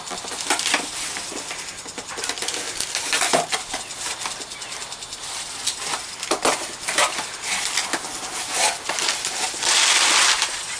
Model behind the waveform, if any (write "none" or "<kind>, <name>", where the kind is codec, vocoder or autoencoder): none